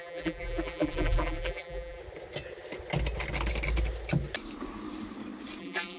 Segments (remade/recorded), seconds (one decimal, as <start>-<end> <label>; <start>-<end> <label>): 0.0-2.0 remade; 2.0-5.6 recorded; 5.6-6.0 remade

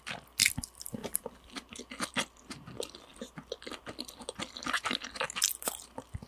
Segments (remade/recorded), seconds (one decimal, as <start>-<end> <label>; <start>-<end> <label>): 0.0-6.3 recorded

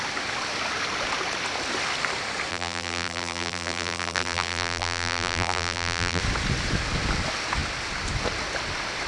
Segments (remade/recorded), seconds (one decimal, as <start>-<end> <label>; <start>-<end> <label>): 0.0-2.5 recorded; 2.5-6.2 remade; 6.2-9.1 recorded

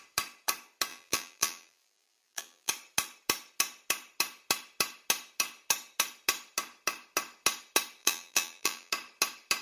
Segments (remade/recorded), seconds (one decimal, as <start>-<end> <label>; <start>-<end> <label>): 0.0-0.9 recorded; 0.9-2.7 remade; 2.7-8.0 recorded; 8.0-8.9 remade; 8.9-9.6 recorded

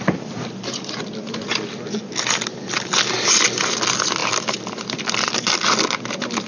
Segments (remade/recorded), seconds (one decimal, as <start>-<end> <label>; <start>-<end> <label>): 0.0-4.2 recorded; 4.2-5.0 remade; 5.0-6.5 recorded

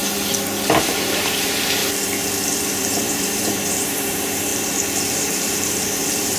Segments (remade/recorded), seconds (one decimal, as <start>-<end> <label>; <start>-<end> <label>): 0.0-0.8 recorded; 0.8-1.8 remade; 1.8-2.4 recorded; 2.4-4.5 remade; 4.5-5.1 recorded; 5.1-6.4 remade

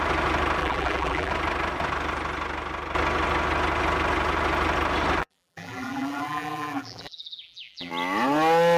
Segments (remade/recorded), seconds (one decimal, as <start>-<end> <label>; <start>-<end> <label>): 0.0-0.6 recorded; 0.6-1.3 remade; 1.3-5.2 recorded; 5.2-7.9 remade; 7.9-8.8 recorded

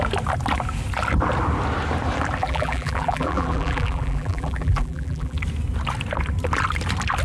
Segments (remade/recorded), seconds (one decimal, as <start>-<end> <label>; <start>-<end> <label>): 0.0-2.4 recorded; 2.4-5.4 remade; 5.4-7.2 recorded